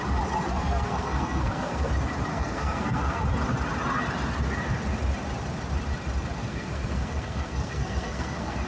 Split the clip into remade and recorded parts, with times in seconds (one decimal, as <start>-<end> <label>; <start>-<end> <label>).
0.0-0.5 recorded; 0.5-1.9 remade; 1.9-2.3 recorded; 2.3-3.2 remade; 3.2-6.4 recorded; 6.4-8.7 remade